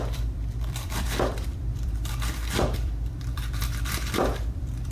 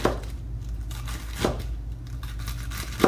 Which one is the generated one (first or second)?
first